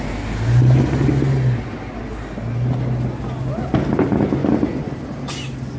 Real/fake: real